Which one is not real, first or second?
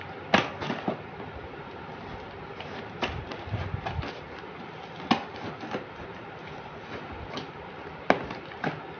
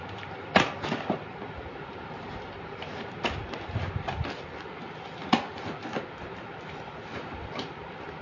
second